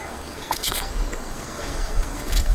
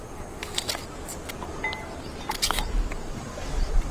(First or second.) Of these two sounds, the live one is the second